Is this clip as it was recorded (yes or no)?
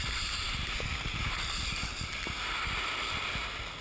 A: yes